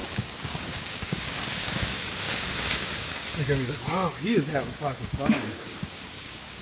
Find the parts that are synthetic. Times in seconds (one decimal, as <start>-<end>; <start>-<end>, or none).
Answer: 0.0-3.2; 4.1-6.6